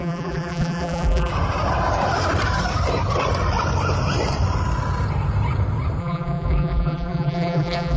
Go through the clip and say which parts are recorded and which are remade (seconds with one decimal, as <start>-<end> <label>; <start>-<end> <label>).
0.0-1.3 remade; 1.3-6.0 recorded; 6.0-8.0 remade